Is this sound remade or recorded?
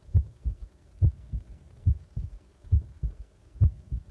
remade